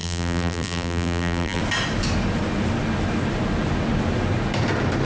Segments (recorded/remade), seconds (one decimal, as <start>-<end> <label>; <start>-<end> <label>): 0.0-1.6 remade; 1.6-5.0 recorded